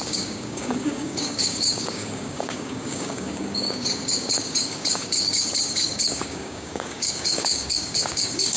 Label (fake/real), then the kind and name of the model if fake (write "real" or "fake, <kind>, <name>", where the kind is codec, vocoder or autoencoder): fake, codec, DAC